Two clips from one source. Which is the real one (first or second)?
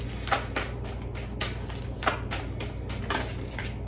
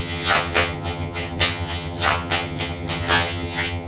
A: first